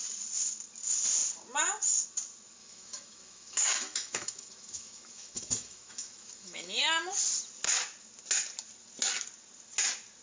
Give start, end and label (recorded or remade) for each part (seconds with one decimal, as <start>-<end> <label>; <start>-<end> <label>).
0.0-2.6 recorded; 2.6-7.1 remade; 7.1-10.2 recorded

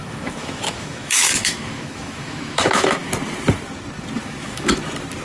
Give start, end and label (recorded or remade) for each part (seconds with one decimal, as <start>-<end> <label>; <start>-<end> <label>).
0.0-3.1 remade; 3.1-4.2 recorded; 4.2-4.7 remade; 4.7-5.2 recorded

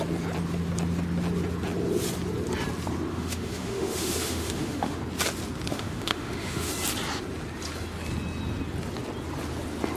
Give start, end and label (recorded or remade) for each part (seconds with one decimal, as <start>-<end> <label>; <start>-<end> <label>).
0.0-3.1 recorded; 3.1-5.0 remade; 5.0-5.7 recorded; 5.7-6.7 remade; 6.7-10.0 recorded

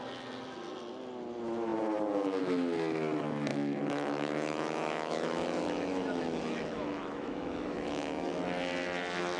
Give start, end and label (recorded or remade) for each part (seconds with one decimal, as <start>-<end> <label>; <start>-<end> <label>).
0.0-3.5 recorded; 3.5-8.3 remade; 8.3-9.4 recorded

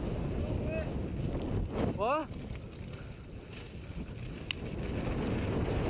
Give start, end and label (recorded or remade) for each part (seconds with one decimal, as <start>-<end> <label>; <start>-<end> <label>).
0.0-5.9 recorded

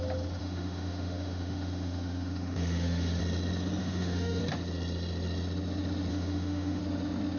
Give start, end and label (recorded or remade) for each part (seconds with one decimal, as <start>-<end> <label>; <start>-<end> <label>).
0.0-0.4 recorded; 0.4-3.2 remade; 3.2-3.8 recorded; 3.8-4.4 remade; 4.4-6.1 recorded; 6.1-6.8 remade; 6.8-7.4 recorded

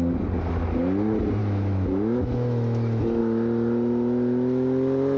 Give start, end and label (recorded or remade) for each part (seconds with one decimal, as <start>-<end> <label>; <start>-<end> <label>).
0.0-1.4 recorded; 1.4-3.2 remade; 3.2-5.2 recorded

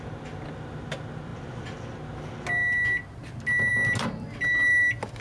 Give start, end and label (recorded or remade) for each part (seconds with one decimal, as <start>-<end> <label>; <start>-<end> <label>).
0.0-5.2 recorded